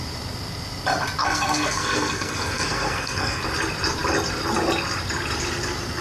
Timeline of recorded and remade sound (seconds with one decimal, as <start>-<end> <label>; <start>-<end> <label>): 0.0-1.2 recorded; 1.2-3.4 remade; 3.4-6.0 recorded

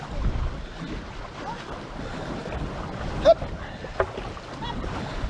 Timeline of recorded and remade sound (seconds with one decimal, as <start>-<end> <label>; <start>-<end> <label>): 0.0-5.3 recorded